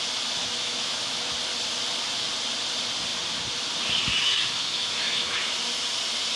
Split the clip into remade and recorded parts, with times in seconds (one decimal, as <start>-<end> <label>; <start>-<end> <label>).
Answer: 0.0-0.4 recorded; 0.4-1.3 remade; 1.3-4.2 recorded; 4.2-5.4 remade; 5.4-6.4 recorded